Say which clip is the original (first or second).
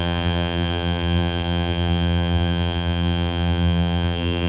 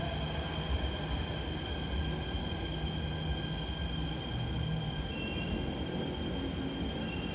second